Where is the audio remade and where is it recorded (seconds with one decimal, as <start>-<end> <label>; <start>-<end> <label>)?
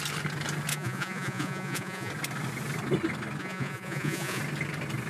0.0-0.7 recorded; 0.7-2.1 remade; 2.1-3.4 recorded; 3.4-4.4 remade; 4.4-5.1 recorded